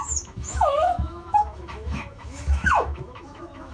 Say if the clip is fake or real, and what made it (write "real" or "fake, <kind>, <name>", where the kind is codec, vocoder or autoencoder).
fake, autoencoder, DAC-VAE